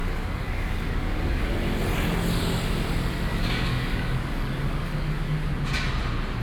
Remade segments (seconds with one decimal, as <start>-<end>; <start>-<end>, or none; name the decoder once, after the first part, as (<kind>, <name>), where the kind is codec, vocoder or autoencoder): 0.0-1.4 (codec, DAC); 3.3-5.5